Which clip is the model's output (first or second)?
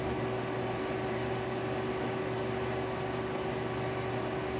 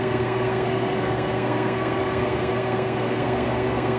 second